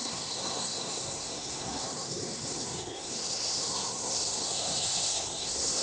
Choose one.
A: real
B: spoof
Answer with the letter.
B